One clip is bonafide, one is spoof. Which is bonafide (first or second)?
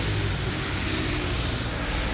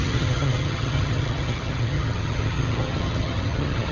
first